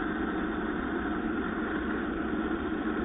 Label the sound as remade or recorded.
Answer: recorded